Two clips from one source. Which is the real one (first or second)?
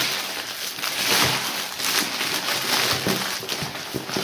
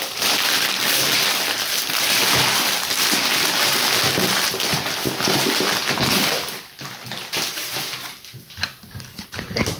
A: first